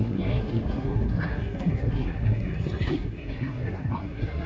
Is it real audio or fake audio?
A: fake